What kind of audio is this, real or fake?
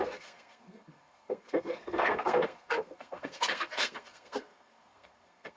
fake